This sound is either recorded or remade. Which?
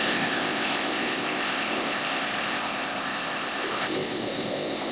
remade